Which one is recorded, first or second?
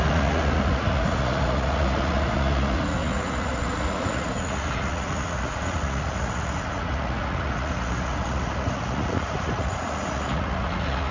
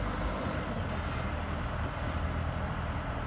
second